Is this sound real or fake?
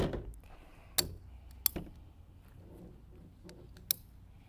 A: real